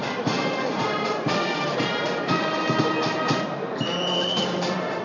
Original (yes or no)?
no